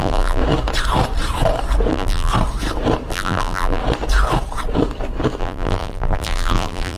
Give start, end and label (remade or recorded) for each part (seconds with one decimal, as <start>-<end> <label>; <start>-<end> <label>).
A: 0.0-0.4 remade; 0.4-1.9 recorded; 1.9-2.3 remade; 2.3-3.1 recorded; 3.1-3.8 remade; 3.8-5.4 recorded; 5.4-7.0 remade